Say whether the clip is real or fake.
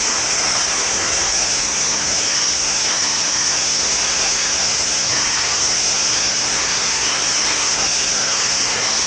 fake